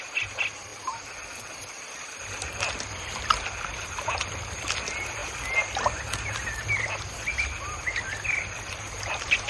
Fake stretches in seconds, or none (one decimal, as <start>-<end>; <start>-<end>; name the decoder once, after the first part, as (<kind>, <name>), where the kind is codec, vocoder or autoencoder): none

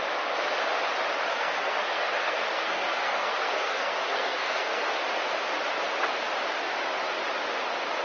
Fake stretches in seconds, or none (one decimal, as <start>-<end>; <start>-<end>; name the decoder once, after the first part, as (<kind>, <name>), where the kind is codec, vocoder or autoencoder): 1.3-4.9 (codec, SNAC)